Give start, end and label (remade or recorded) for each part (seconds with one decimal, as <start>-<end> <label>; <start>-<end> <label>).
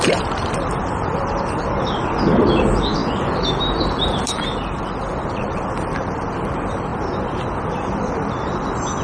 0.0-6.9 remade; 6.9-7.7 recorded; 7.7-9.0 remade